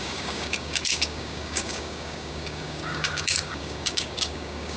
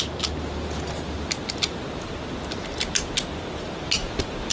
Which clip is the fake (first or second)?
first